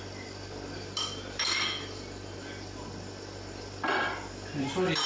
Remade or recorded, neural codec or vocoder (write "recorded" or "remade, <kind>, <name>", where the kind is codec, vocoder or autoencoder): recorded